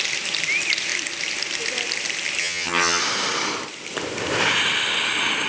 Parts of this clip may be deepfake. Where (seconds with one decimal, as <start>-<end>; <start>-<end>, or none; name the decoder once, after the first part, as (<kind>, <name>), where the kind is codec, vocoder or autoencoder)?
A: 2.4-3.0 (vocoder, HiFi-GAN)